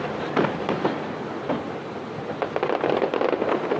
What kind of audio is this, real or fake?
real